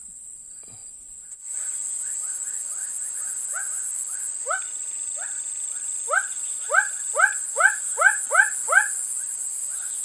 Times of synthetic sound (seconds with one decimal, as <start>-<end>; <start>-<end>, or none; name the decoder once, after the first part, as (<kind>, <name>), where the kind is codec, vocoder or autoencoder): none